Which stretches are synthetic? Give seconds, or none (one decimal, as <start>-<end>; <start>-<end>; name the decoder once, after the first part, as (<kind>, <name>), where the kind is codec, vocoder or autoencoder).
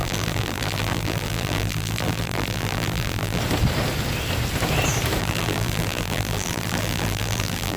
0.0-3.4 (vocoder, BigVGAN v2); 5.2-7.8